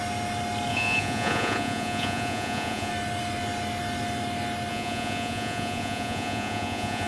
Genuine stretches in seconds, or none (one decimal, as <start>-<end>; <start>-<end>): 0.0-0.7; 2.9-4.7

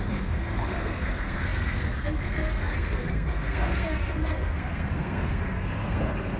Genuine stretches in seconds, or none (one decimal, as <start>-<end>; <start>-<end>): none

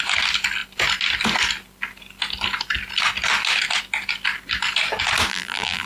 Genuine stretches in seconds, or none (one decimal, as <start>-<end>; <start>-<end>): 0.0-5.3

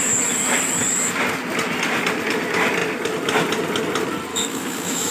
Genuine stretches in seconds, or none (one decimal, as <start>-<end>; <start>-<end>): 0.0-4.3